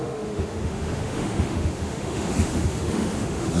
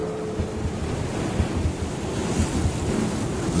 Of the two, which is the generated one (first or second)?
first